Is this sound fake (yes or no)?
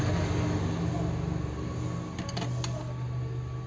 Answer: no